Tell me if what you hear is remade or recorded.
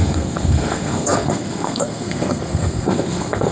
remade